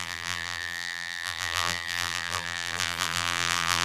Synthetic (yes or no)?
yes